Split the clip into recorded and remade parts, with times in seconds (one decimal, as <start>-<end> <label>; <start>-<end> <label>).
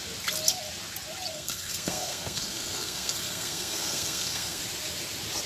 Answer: 0.0-1.3 recorded; 1.3-4.6 remade; 4.6-5.5 recorded